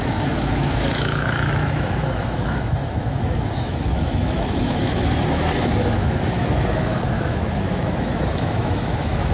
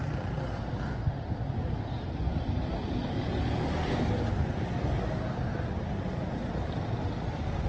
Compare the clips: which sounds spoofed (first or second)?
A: first